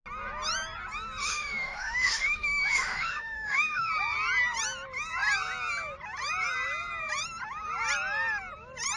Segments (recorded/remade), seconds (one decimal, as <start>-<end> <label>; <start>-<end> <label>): 0.0-1.2 recorded; 1.2-3.9 remade; 3.9-9.0 recorded